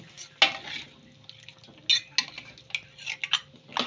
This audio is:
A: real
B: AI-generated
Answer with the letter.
A